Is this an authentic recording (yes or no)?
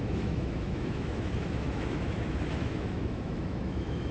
no